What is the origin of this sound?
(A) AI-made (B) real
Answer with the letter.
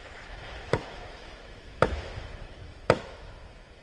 A